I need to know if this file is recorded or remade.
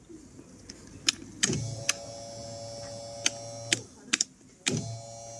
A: recorded